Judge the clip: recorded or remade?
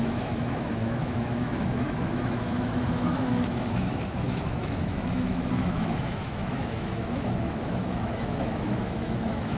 remade